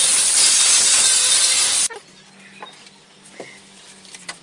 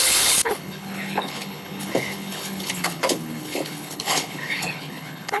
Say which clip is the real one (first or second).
first